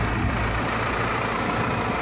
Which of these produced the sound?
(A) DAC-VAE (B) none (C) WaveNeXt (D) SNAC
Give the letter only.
B